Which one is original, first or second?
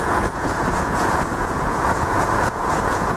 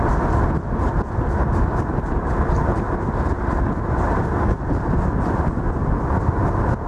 second